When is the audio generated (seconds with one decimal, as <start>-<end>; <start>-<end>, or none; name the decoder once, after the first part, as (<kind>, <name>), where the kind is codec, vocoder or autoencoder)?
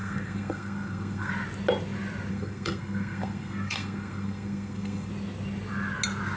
0.0-1.3 (codec, SNAC); 2.3-5.1